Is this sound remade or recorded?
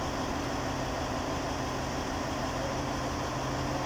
recorded